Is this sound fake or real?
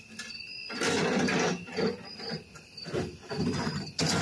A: real